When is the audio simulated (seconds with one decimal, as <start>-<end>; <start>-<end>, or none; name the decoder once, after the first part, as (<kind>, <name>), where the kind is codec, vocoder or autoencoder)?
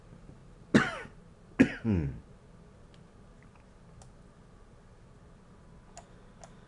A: none